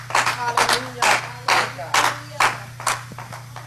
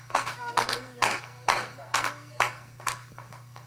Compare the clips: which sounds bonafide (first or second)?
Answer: first